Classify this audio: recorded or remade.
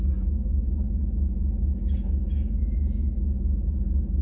remade